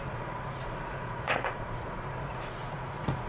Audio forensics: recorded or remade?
remade